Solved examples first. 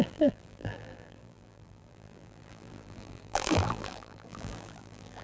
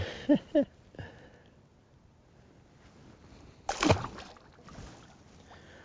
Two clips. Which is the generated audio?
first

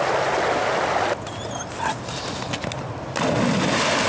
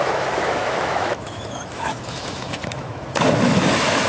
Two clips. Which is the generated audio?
second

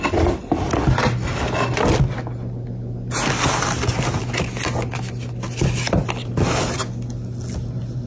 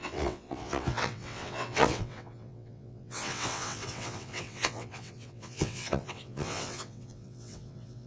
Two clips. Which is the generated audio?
second